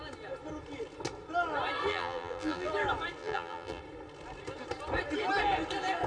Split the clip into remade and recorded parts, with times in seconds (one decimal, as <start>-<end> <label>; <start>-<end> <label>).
0.0-1.9 recorded; 1.9-2.7 remade; 2.7-3.2 recorded; 3.2-3.8 remade; 3.8-6.1 recorded

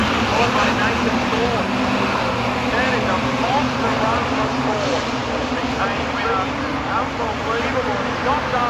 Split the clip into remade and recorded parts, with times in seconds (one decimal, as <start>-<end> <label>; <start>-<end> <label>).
0.0-8.7 recorded

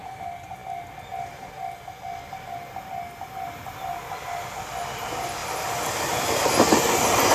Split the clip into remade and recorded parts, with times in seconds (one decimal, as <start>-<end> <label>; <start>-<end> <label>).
0.0-7.3 recorded

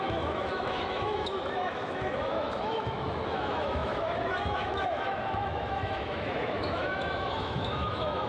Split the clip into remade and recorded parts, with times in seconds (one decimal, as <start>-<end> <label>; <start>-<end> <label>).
0.0-8.3 remade

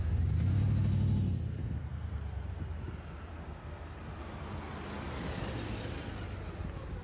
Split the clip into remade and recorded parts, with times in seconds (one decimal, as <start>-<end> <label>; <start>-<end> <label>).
0.0-1.6 recorded; 1.6-2.2 remade; 2.2-3.3 recorded; 3.3-4.0 remade; 4.0-7.0 recorded